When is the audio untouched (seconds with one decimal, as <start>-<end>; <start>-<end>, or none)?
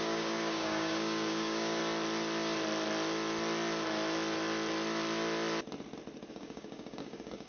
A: 1.8-6.3